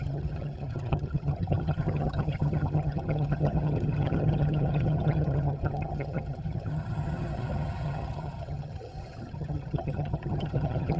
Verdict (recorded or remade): remade